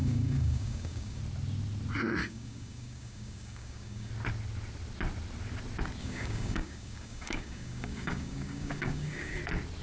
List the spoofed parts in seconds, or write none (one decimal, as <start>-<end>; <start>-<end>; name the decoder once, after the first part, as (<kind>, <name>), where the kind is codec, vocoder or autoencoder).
0.0-1.2 (codec, DAC); 2.2-4.1; 6.0-9.4